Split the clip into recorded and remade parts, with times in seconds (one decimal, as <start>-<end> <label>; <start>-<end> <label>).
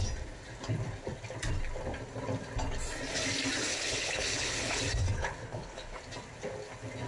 0.0-3.7 recorded; 3.7-4.8 remade; 4.8-5.2 recorded; 5.2-6.0 remade; 6.0-7.1 recorded